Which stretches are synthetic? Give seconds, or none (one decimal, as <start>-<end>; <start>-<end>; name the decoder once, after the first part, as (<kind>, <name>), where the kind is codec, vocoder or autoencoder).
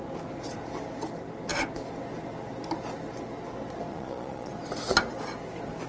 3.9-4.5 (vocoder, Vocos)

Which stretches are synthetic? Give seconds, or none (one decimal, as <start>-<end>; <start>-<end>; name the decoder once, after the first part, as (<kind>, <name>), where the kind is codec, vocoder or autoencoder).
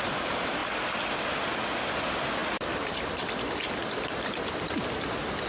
none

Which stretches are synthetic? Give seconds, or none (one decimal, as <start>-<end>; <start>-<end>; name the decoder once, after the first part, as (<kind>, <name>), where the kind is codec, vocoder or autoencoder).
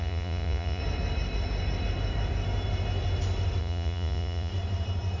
0.0-0.8 (vocoder, Vocos); 3.6-4.5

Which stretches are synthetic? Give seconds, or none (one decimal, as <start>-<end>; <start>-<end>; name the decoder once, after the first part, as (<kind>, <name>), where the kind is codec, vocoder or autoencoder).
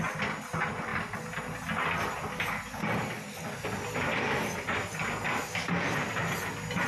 none